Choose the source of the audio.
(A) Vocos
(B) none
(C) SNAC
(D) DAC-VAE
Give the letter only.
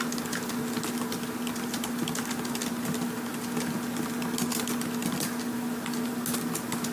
B